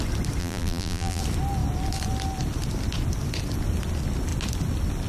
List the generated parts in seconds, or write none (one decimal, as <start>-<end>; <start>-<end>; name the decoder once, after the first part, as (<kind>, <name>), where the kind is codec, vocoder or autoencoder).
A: 0.4-1.2 (vocoder, BigVGAN v2)